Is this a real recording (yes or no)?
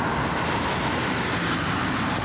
yes